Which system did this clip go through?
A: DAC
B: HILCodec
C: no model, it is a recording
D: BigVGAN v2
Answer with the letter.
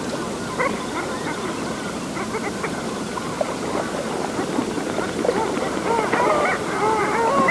C